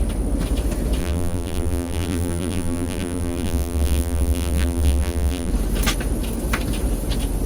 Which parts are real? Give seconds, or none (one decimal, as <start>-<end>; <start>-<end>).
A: 0.0-1.0; 5.5-7.5